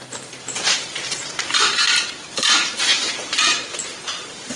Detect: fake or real fake